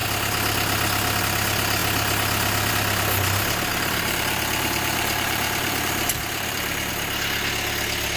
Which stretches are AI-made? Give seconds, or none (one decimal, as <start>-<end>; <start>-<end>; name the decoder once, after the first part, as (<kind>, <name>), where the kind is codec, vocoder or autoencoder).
3.7-6.9 (vocoder, BigVGAN v2)